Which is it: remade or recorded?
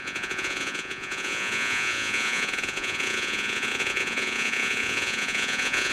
remade